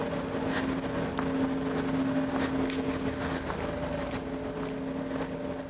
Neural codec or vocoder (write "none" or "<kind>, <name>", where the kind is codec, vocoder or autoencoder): none